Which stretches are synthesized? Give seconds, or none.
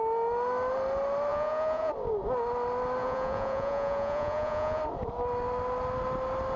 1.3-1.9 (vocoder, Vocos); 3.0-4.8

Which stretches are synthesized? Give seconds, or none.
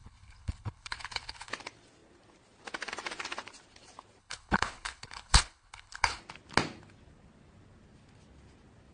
0.0-1.5 (codec, HILCodec); 4.2-6.2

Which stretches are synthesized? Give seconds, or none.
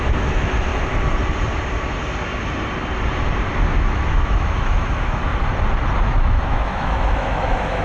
0.0-0.7 (autoencoder, DAC-VAE); 3.8-5.3; 6.2-7.8